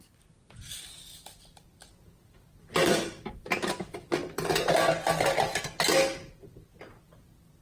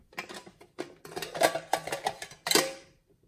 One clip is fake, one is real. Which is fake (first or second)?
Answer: second